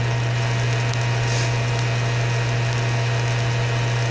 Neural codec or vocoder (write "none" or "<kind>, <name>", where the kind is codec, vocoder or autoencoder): none